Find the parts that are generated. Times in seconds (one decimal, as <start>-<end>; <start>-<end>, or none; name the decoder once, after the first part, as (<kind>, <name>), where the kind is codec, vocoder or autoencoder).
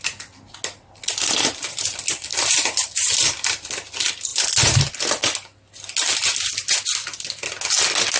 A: none